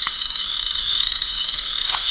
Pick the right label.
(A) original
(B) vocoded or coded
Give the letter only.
B